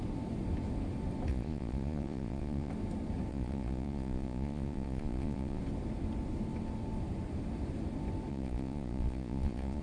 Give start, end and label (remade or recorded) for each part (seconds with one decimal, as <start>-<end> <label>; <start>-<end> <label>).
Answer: 0.0-1.3 recorded; 1.3-2.7 remade; 2.7-3.3 recorded; 3.3-5.6 remade; 5.6-8.3 recorded; 8.3-9.8 remade